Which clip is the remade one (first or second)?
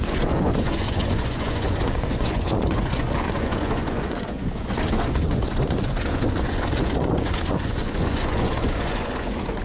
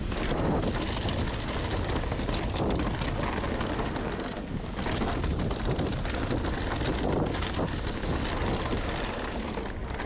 first